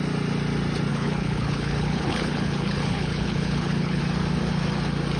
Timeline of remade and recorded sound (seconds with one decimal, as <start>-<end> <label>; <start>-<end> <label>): 0.0-0.9 recorded; 0.9-4.0 remade; 4.0-5.2 recorded